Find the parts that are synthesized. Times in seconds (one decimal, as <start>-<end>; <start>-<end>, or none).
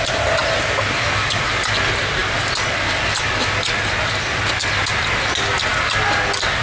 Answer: none